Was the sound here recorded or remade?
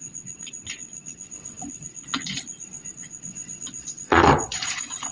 remade